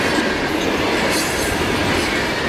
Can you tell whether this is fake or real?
real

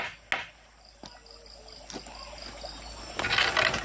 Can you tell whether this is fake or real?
real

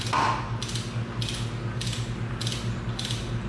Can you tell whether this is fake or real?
real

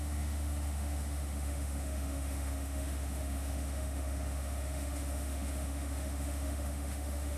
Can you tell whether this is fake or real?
fake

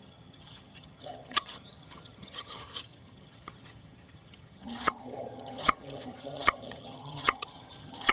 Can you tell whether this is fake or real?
fake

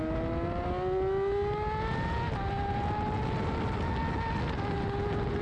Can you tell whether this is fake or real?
real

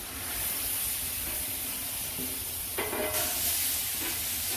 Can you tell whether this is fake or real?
real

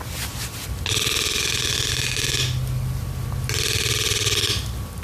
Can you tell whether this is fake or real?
real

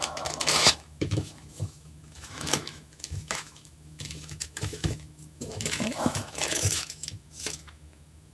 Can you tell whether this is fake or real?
fake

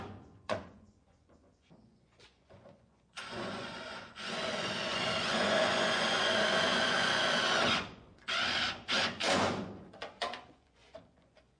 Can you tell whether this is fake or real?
fake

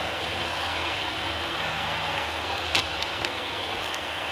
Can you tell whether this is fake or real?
fake